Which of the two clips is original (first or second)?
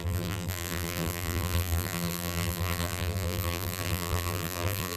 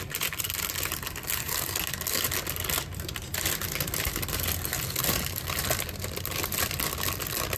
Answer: second